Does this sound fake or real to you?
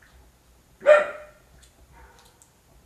real